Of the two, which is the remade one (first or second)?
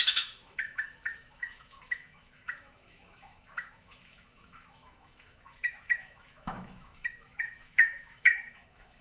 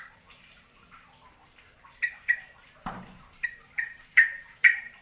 first